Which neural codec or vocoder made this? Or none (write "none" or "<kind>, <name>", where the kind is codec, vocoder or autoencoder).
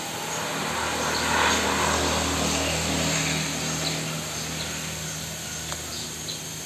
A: none